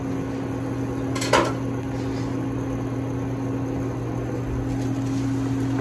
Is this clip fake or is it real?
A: real